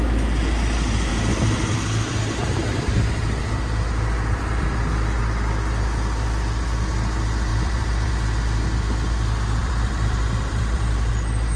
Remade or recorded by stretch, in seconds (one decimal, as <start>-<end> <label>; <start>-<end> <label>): 0.0-2.4 recorded; 2.4-5.2 remade; 5.2-7.5 recorded; 7.5-8.1 remade; 8.1-9.6 recorded; 9.6-11.1 remade; 11.1-11.6 recorded